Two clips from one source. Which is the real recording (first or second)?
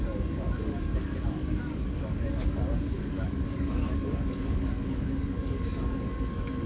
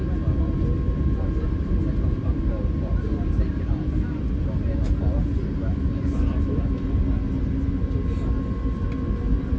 second